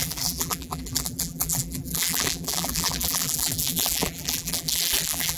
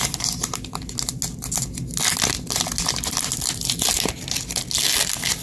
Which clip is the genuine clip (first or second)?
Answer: second